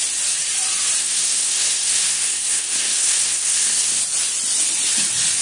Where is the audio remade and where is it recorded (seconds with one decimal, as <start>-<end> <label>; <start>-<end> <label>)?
0.0-1.0 recorded; 1.0-4.0 remade; 4.0-5.4 recorded